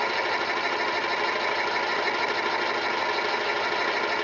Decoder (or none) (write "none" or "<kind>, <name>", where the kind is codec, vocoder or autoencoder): none